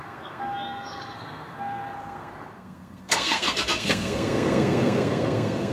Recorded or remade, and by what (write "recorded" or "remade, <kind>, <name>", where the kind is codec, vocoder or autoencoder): remade, codec, SNAC